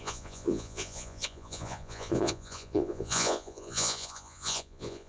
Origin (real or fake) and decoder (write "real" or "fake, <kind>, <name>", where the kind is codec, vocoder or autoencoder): fake, vocoder, Vocos